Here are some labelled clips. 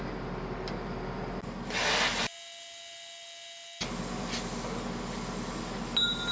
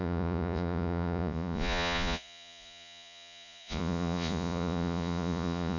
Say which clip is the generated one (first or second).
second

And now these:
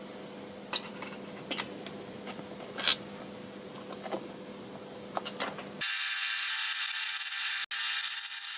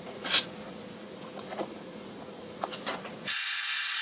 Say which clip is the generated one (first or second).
second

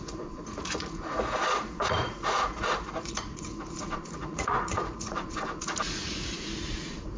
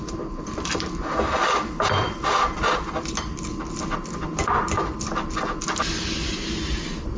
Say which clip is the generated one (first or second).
first